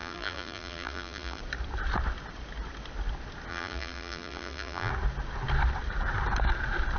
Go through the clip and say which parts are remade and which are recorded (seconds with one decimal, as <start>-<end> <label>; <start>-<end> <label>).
0.0-1.4 remade; 1.4-3.5 recorded; 3.5-4.9 remade; 4.9-7.0 recorded

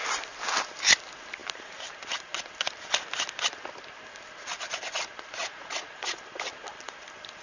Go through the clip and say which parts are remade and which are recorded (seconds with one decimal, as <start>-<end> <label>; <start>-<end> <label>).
0.0-5.4 recorded; 5.4-6.2 remade; 6.2-7.4 recorded

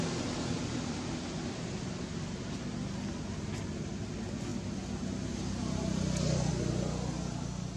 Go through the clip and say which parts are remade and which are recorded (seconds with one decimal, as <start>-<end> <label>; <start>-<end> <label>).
0.0-7.8 recorded

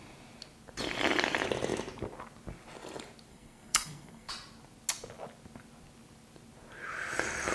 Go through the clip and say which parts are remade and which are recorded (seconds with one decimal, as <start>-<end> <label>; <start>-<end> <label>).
0.0-3.3 recorded; 3.3-4.3 remade; 4.3-7.5 recorded

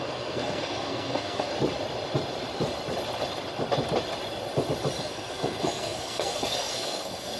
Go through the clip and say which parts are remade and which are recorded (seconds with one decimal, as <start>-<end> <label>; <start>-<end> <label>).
0.0-1.5 remade; 1.5-5.0 recorded; 5.0-7.4 remade